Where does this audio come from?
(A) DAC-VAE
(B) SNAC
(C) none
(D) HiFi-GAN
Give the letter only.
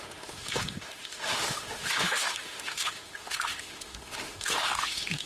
A